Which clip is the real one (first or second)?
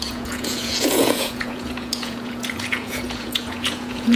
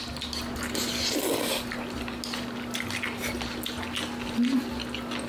second